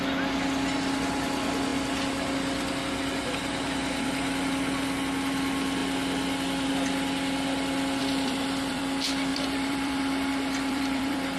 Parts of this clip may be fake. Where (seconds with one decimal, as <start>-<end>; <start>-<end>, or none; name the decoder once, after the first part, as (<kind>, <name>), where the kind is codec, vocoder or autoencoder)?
8.0-8.8 (vocoder, BigVGAN v2); 9.3-11.4